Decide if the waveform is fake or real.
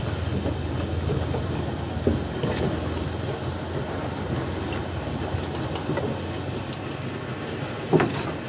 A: real